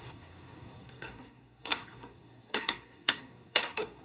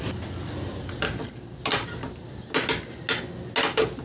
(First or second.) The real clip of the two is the second